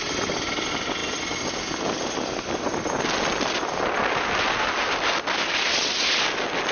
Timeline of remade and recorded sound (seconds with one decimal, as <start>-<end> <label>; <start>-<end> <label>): 0.0-6.7 recorded